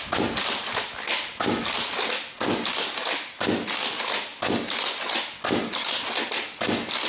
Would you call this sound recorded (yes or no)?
yes